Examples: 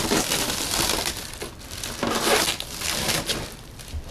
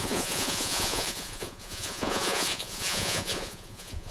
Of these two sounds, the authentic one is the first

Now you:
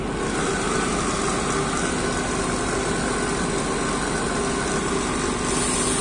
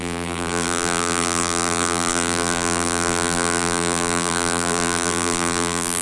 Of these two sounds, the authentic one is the first